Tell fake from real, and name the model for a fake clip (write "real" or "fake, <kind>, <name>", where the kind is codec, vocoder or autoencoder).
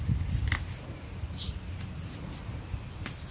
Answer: real